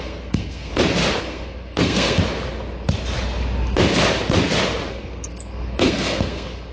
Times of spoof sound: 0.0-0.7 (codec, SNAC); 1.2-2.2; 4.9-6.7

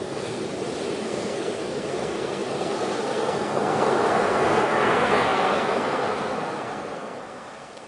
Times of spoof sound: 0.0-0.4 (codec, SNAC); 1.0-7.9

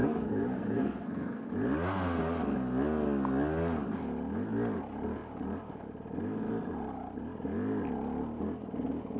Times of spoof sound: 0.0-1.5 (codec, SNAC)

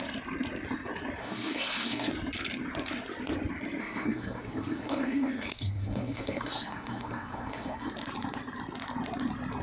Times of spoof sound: 1.2-2.1 (codec, SNAC); 3.8-7.9

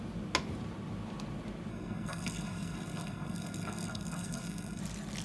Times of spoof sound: 1.7-4.8 (codec, SNAC)

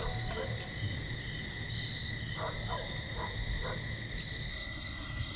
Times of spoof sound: 4.5-5.4 (codec, SNAC)

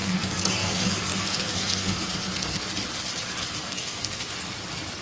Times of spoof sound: 0.0-2.7 (codec, SNAC); 3.6-4.3

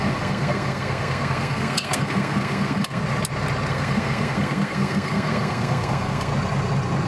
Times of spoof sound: 0.0-3.0 (codec, SNAC); 3.7-6.3